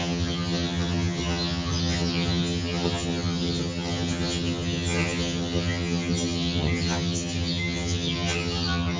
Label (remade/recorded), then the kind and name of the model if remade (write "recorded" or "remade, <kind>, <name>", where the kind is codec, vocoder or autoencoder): remade, vocoder, HiFi-GAN